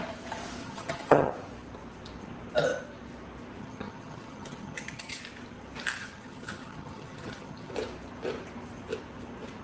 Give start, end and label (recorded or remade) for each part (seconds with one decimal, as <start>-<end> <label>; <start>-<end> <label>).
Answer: 0.0-0.6 recorded; 0.6-1.3 remade; 1.3-3.6 recorded; 3.6-5.2 remade; 5.2-6.0 recorded; 6.0-7.7 remade; 7.7-9.6 recorded